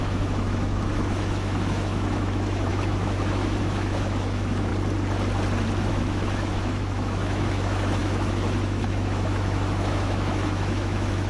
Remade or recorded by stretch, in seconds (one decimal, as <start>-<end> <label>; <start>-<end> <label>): 0.0-4.7 remade; 4.7-5.9 recorded; 5.9-11.3 remade